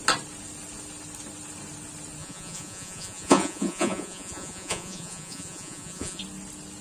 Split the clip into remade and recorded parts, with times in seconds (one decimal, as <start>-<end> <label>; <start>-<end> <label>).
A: 0.0-2.2 recorded; 2.2-6.2 remade; 6.2-6.8 recorded